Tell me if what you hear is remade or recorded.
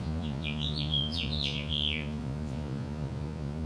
remade